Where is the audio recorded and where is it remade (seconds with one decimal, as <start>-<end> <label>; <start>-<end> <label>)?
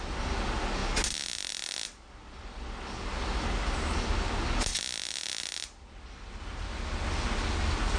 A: 0.0-8.0 recorded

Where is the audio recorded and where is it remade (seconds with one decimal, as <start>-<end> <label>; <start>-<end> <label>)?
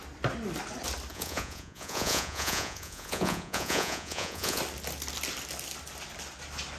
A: 0.0-1.1 recorded; 1.1-4.6 remade; 4.6-6.8 recorded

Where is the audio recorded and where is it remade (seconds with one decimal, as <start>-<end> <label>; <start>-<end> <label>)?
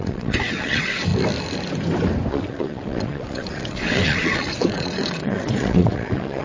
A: 0.0-1.1 remade; 1.1-2.3 recorded; 2.3-6.4 remade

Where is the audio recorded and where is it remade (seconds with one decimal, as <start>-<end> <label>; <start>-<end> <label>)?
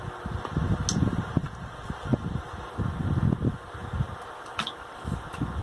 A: 0.0-5.6 recorded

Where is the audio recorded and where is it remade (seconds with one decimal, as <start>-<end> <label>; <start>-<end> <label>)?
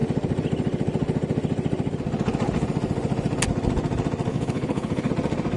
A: 0.0-4.3 recorded; 4.3-5.1 remade; 5.1-5.6 recorded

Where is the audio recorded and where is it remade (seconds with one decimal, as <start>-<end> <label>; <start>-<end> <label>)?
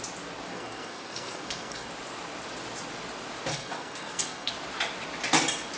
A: 0.0-0.5 recorded; 0.5-1.9 remade; 1.9-3.5 recorded; 3.5-4.5 remade; 4.5-5.8 recorded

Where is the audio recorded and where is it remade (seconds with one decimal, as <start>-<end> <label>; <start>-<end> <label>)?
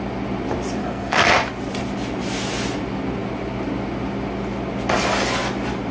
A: 0.0-0.8 recorded; 0.8-1.3 remade; 1.3-5.9 recorded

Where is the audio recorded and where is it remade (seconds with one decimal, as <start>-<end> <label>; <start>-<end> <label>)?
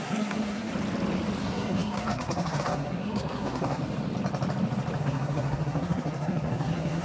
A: 0.0-0.7 remade; 0.7-1.4 recorded; 1.4-3.8 remade; 3.8-5.0 recorded; 5.0-7.0 remade